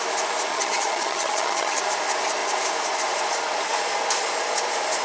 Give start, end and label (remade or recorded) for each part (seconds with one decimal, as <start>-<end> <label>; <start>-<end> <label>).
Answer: 0.0-0.5 recorded; 0.5-1.8 remade; 1.8-5.0 recorded